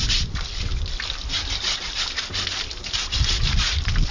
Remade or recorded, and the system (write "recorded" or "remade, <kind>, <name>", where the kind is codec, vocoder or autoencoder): recorded